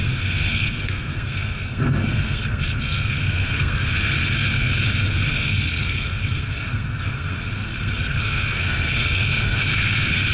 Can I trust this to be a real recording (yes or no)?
no